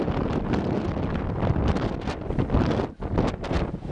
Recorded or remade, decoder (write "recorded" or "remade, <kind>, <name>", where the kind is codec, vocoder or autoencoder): recorded